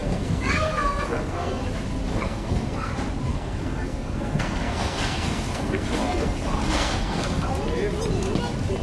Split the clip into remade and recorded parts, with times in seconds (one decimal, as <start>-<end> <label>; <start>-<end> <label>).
0.0-1.6 remade; 1.6-2.1 recorded; 2.1-2.9 remade; 2.9-3.3 recorded; 3.3-7.5 remade; 7.5-8.8 recorded